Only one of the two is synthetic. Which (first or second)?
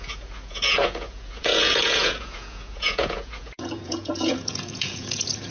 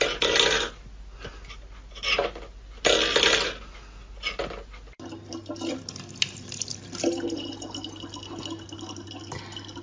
first